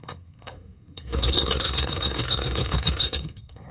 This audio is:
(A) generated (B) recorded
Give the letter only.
A